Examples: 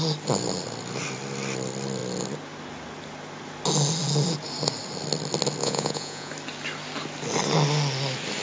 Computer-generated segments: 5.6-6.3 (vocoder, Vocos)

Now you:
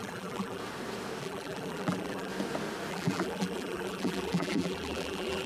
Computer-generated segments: 0.0-0.6 (vocoder, BigVGAN v2); 1.2-2.3; 2.9-5.5

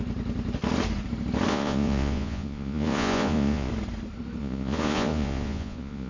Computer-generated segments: 1.5-3.7 (vocoder, Vocos); 4.4-6.1

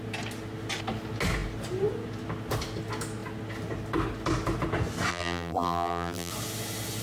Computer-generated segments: 5.1-6.3 (vocoder, BigVGAN v2)

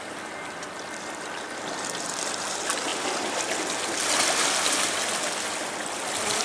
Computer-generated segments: none